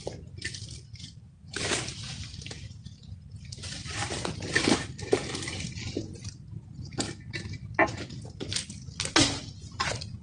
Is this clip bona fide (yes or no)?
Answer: yes